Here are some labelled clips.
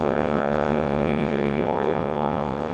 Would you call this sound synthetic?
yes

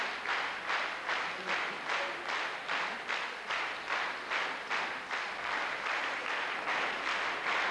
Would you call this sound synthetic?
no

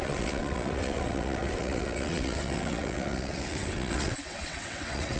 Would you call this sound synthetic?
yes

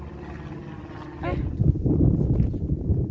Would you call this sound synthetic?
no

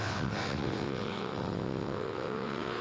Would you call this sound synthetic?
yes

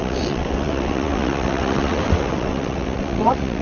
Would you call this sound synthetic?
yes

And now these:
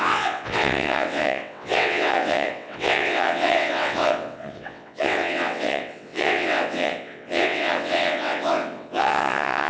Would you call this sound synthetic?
yes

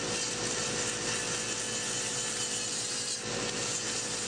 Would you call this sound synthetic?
no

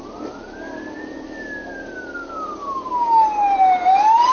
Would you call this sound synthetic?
no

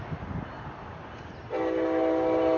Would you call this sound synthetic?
no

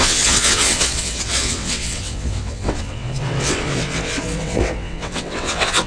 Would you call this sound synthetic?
yes